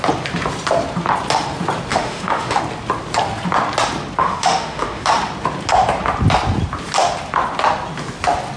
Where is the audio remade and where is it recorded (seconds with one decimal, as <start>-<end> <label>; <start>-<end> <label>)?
0.0-1.9 recorded; 1.9-2.6 remade; 2.6-4.2 recorded; 4.2-5.1 remade; 5.1-8.6 recorded